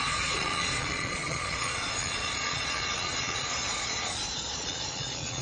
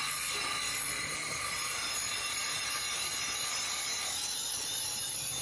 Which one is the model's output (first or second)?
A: first